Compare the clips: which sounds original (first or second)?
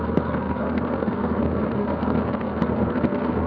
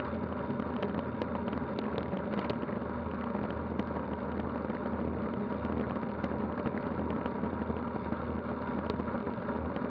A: second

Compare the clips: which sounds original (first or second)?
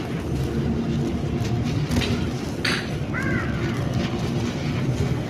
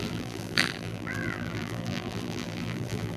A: first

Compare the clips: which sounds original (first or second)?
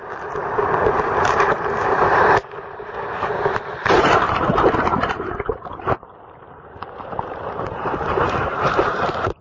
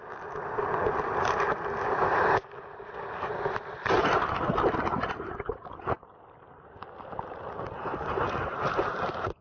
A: second